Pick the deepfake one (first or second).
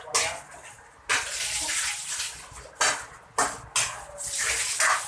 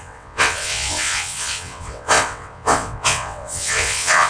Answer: second